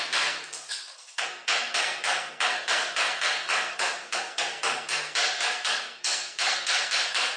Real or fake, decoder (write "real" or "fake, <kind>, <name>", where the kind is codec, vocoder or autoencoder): fake, codec, SNAC